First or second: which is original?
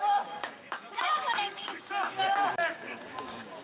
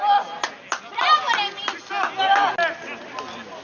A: second